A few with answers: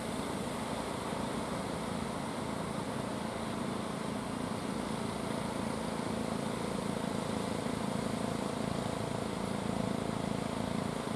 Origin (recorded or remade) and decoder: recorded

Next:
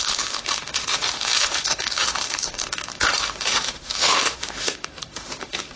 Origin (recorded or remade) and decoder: remade, autoencoder, DAC-VAE